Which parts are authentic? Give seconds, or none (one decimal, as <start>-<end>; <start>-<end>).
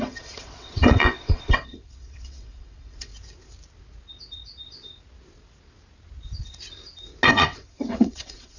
3.1-7.3